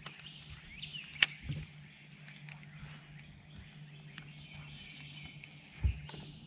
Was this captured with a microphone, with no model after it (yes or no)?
yes